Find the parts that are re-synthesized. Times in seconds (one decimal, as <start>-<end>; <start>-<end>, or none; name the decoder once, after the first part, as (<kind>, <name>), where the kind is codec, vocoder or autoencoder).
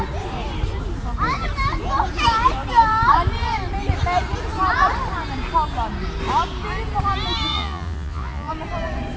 7.5-8.5 (vocoder, Vocos)